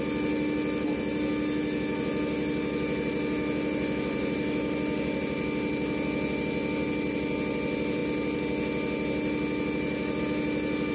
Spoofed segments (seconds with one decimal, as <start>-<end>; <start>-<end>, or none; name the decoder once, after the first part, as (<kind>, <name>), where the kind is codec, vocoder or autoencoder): none